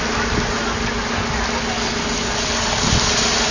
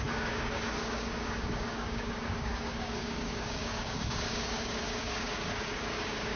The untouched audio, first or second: first